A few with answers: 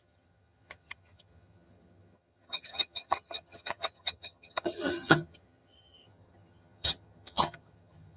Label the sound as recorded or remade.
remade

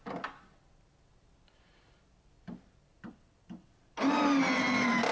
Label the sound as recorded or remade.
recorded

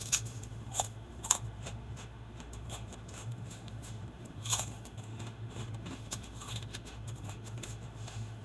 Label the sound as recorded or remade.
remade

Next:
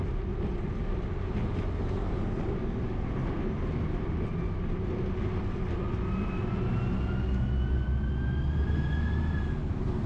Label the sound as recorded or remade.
recorded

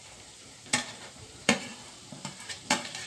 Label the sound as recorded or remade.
remade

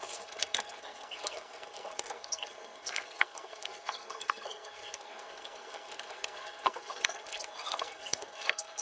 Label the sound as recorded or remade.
remade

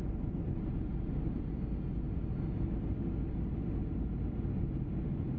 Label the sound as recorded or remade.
recorded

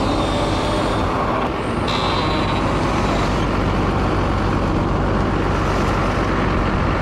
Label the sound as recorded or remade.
recorded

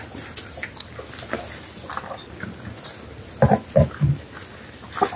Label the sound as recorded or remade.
recorded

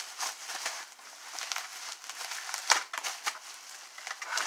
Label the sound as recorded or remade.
recorded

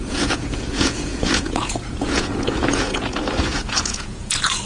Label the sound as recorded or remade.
remade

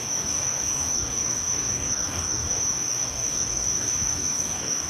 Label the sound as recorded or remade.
remade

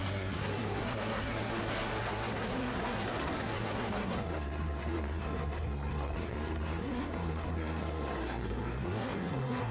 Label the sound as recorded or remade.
remade